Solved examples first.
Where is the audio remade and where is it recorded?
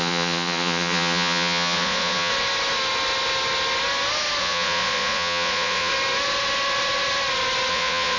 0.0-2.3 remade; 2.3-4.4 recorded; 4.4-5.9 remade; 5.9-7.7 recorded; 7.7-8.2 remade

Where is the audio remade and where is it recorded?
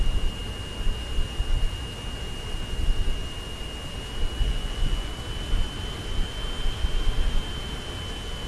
0.0-4.4 recorded; 4.4-5.1 remade; 5.1-8.5 recorded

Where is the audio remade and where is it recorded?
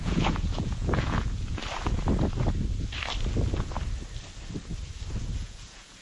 0.0-1.6 remade; 1.6-5.2 recorded; 5.2-6.0 remade